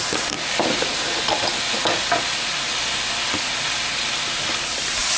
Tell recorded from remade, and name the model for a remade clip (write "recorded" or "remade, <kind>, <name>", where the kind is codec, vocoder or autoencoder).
recorded